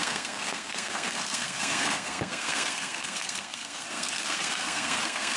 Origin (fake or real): fake